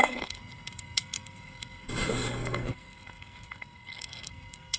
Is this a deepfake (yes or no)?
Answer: yes